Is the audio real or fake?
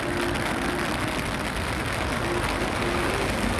real